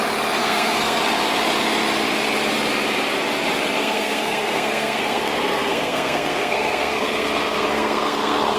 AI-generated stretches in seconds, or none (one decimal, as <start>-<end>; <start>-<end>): 0.4-1.0; 3.8-8.6